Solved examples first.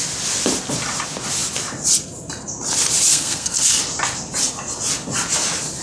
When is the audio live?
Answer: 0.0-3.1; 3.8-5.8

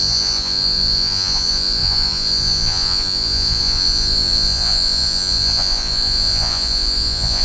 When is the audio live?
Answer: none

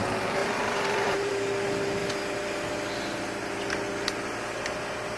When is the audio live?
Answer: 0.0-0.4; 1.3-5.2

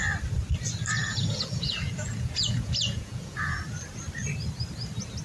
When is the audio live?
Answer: 0.0-1.0; 3.6-5.2

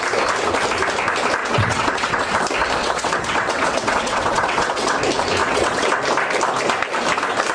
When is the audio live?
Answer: 0.0-1.4; 2.3-2.8; 5.0-5.4; 6.0-7.5

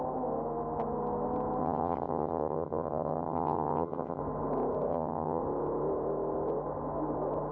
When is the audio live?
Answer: 0.0-1.6; 4.2-4.9; 5.4-7.5

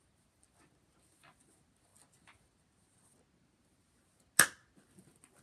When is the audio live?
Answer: 0.0-5.4

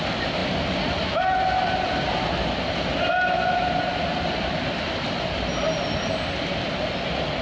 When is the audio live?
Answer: 0.0-7.4